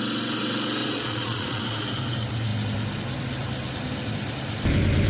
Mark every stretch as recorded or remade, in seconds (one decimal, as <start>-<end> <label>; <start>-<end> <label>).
0.0-0.8 recorded; 0.8-1.6 remade; 1.6-5.1 recorded